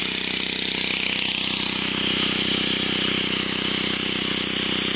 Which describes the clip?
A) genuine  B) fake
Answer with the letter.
A